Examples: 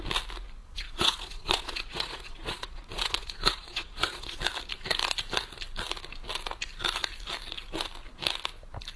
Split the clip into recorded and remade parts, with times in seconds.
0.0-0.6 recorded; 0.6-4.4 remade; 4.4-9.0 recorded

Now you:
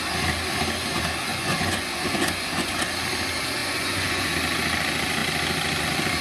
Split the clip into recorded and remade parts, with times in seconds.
0.0-1.3 recorded; 1.3-2.9 remade; 2.9-3.6 recorded; 3.6-4.3 remade; 4.3-6.2 recorded

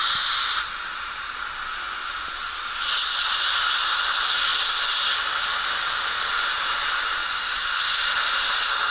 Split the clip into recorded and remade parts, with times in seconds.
0.0-7.2 recorded; 7.2-8.0 remade; 8.0-8.9 recorded

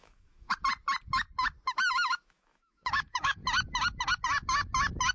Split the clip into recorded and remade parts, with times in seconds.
0.0-0.5 remade; 0.5-1.9 recorded; 1.9-3.4 remade; 3.4-5.1 recorded

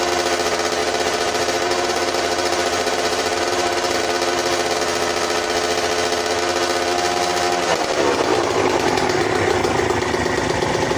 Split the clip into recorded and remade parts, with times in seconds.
0.0-0.8 recorded; 0.8-4.0 remade; 4.0-8.3 recorded; 8.3-9.2 remade; 9.2-11.0 recorded